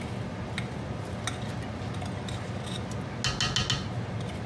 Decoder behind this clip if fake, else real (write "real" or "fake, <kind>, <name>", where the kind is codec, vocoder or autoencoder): real